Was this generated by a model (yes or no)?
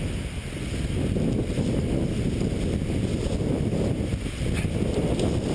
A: no